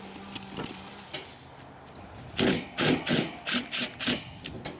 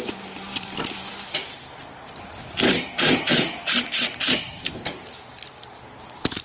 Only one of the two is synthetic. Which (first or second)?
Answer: second